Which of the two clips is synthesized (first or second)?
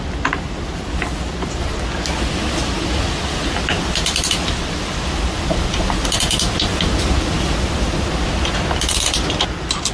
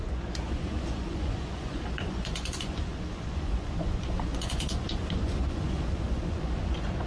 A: second